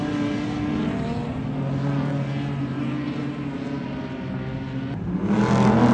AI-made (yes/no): no